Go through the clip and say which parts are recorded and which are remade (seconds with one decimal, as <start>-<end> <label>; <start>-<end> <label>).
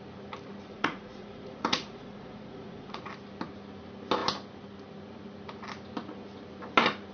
0.0-0.7 recorded; 0.7-3.0 remade; 3.0-7.1 recorded